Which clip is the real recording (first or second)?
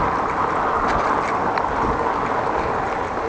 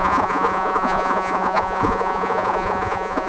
first